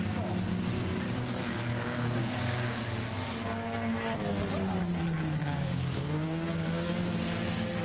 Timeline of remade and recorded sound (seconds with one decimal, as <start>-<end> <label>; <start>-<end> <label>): 0.0-2.2 recorded; 2.2-2.8 remade; 2.8-5.4 recorded; 5.4-6.9 remade; 6.9-7.8 recorded